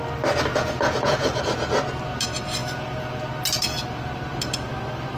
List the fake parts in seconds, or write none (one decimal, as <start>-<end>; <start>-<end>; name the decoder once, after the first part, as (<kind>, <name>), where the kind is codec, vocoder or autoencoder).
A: 0.5-1.4 (vocoder, Vocos); 2.6-3.2